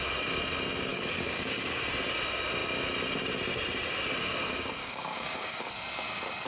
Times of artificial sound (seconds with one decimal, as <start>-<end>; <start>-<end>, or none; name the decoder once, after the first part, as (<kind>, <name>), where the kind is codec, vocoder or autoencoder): 0.9-1.8 (codec, DAC); 4.8-5.7